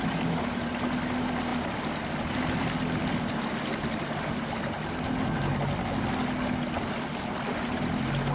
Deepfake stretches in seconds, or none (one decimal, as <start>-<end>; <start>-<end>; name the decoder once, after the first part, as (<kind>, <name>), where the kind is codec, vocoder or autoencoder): none